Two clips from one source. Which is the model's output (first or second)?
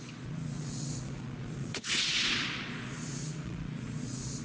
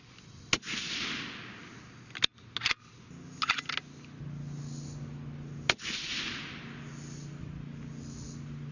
first